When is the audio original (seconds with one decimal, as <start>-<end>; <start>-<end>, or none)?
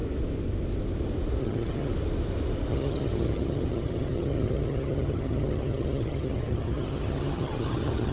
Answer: 0.0-1.4; 1.9-2.7